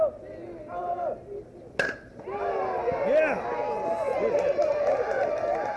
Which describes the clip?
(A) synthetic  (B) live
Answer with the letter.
B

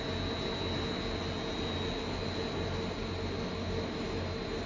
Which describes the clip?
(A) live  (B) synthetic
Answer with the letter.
A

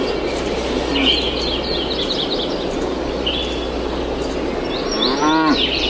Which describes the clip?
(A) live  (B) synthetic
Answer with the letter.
A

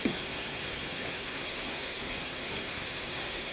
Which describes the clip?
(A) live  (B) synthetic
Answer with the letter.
B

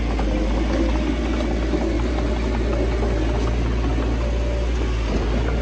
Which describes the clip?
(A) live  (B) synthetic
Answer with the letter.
A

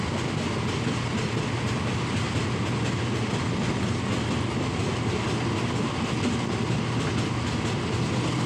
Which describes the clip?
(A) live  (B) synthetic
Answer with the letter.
A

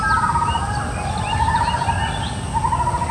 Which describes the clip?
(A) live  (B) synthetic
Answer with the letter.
A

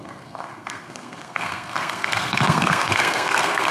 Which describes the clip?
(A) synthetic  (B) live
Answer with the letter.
A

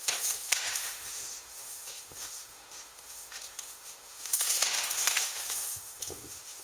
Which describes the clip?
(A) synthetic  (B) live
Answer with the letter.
A